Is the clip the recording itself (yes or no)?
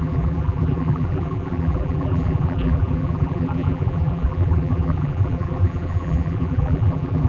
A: no